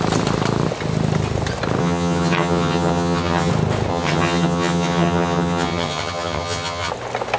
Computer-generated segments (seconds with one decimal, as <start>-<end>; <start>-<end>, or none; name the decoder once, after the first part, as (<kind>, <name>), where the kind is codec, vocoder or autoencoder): 1.8-3.5 (vocoder, HiFi-GAN); 3.9-6.9